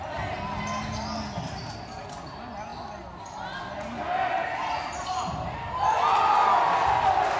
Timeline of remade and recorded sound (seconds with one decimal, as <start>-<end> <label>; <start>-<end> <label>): 0.0-7.4 recorded